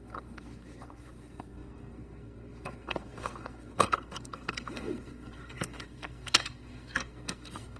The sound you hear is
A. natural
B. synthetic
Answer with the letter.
B